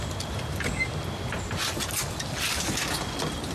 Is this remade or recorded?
recorded